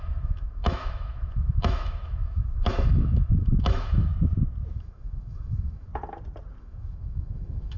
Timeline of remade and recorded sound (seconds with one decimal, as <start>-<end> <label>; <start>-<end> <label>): 0.0-4.1 remade; 4.1-4.7 recorded; 4.7-5.9 remade; 5.9-6.6 recorded; 6.6-7.8 remade